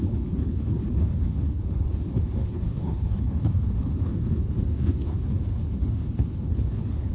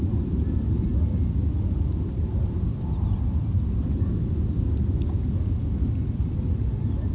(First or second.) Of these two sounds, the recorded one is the second